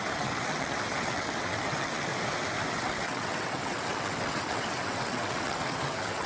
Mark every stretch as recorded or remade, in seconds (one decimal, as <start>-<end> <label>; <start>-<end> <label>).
0.0-2.1 remade; 2.1-2.7 recorded; 2.7-6.3 remade